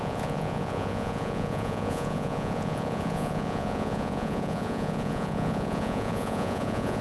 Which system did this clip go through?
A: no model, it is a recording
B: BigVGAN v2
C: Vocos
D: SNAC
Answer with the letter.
C